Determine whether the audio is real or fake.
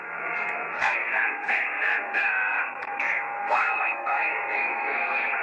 fake